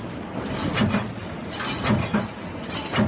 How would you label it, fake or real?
real